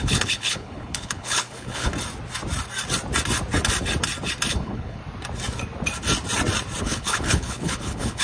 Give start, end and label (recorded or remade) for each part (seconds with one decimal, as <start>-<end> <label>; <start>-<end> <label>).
0.0-1.9 remade; 1.9-4.5 recorded; 4.5-5.0 remade; 5.0-6.8 recorded; 6.8-8.2 remade